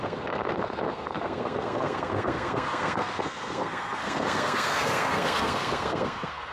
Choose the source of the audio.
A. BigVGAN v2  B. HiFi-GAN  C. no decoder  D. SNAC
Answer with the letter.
D